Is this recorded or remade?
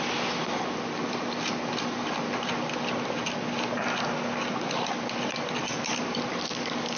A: recorded